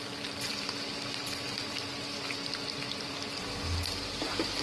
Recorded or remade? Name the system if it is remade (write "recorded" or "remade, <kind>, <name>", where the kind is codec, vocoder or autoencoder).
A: recorded